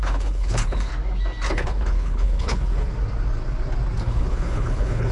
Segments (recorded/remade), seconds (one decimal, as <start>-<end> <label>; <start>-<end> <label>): 0.0-0.9 remade; 0.9-1.5 recorded; 1.5-2.9 remade; 2.9-4.0 recorded; 4.0-5.1 remade